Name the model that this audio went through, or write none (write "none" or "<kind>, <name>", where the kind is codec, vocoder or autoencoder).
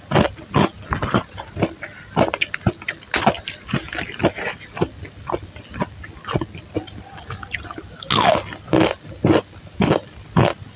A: none